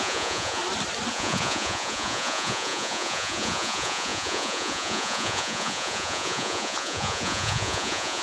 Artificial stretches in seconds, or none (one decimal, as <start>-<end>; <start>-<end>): 0.0-0.6; 1.1-8.2